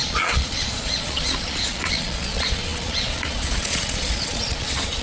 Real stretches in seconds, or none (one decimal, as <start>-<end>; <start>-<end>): none